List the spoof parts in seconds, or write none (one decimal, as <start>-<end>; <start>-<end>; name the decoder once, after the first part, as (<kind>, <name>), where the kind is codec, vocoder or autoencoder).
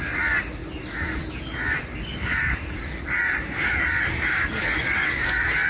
2.1-4.5 (vocoder, BigVGAN v2)